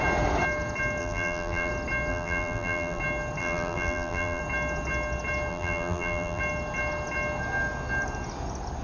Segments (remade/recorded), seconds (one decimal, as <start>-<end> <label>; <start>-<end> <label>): 0.0-1.0 recorded; 1.0-1.7 remade; 1.7-2.1 recorded; 2.1-3.0 remade; 3.0-3.4 recorded; 3.4-4.4 remade; 4.4-5.5 recorded; 5.5-6.4 remade; 6.4-8.8 recorded

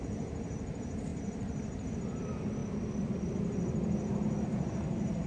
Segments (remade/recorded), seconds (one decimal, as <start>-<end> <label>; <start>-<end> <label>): 0.0-2.6 remade; 2.6-4.4 recorded; 4.4-5.3 remade